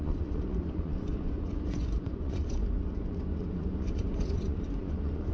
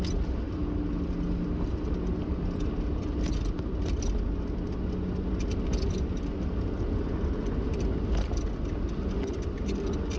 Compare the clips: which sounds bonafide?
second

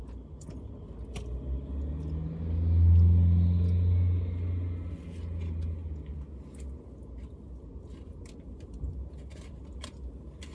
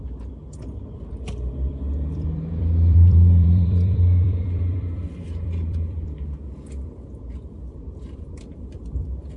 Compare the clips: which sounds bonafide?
first